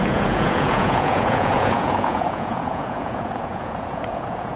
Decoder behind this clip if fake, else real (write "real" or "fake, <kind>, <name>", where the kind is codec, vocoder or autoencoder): fake, vocoder, Vocos